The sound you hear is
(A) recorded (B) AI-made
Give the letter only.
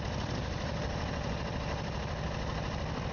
A